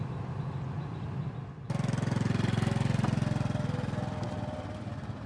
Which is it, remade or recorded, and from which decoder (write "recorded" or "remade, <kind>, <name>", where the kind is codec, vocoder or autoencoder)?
recorded